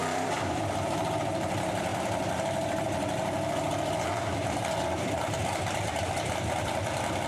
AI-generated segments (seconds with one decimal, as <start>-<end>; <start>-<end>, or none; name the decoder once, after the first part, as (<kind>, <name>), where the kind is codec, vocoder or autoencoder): 0.0-7.3 (vocoder, BigVGAN v2)